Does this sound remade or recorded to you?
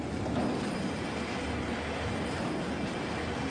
recorded